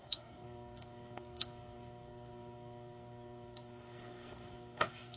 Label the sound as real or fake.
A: fake